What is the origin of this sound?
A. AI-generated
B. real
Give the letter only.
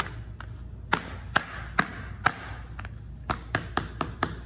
B